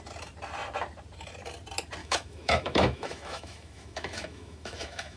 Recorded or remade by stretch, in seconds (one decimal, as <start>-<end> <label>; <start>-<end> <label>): 0.0-2.0 recorded; 2.0-5.2 remade